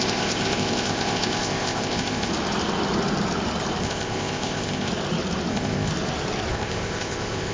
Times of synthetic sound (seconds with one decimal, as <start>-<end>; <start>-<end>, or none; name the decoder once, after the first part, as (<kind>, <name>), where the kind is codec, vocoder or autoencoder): 0.0-2.3 (codec, ZipCodec); 3.8-4.9; 5.5-5.9; 6.5-7.5

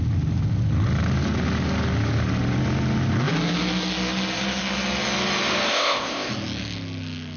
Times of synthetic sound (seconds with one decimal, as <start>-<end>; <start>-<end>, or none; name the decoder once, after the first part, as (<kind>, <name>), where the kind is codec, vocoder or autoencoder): 5.7-6.3 (codec, ZipCodec)

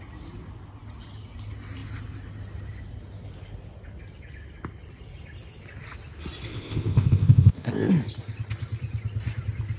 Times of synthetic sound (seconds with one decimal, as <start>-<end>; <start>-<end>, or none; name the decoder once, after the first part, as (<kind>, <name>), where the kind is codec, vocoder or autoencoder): 6.5-7.9 (codec, ZipCodec)

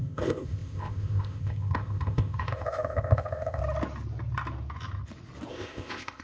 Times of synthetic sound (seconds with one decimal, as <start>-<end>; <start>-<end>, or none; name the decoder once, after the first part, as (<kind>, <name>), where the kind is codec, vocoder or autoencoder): 0.0-3.6 (codec, ZipCodec); 5.5-6.2

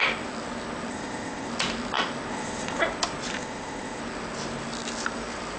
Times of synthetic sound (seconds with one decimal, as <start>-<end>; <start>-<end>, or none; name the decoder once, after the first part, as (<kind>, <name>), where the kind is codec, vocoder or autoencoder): 0.9-1.5 (codec, ZipCodec); 2.3-2.8; 3.3-4.0

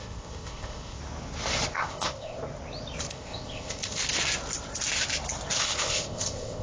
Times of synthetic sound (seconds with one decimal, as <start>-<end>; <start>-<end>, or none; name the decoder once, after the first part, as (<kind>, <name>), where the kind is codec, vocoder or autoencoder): 0.0-1.0 (codec, ZipCodec); 1.7-2.4; 3.1-4.0; 5.6-6.6

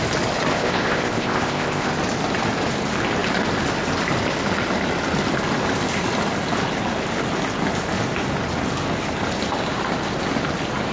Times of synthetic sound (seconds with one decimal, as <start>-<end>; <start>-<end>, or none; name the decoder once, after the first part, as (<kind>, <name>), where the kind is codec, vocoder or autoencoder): 0.5-1.9 (codec, ZipCodec)

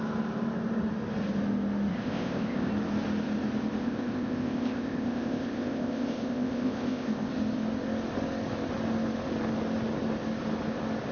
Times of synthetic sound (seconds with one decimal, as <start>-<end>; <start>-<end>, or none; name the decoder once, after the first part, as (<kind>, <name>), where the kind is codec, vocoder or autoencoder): 1.9-2.7 (codec, ZipCodec); 3.8-7.3